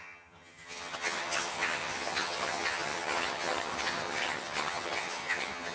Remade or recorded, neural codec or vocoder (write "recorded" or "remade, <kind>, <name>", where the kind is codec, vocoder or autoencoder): remade, vocoder, HiFi-GAN